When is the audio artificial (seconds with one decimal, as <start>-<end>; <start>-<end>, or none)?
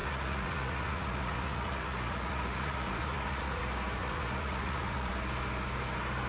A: 0.0-3.6; 4.0-5.1